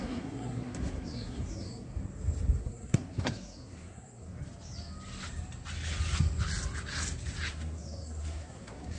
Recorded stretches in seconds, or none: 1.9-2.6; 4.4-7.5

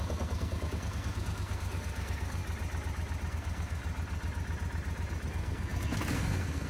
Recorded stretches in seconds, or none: 2.4-3.3; 3.8-5.3

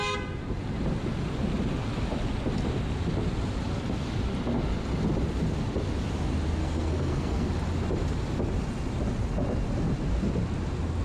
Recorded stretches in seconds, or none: 0.0-6.6; 7.5-11.0

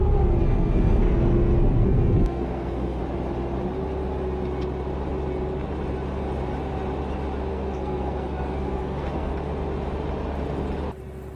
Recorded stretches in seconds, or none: 0.0-0.4; 3.0-7.5; 9.3-11.4

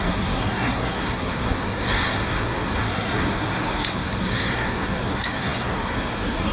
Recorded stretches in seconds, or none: none

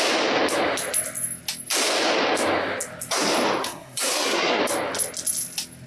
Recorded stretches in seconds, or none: 0.0-3.6; 4.6-5.9